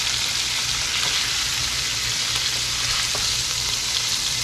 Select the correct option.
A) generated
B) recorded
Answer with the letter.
B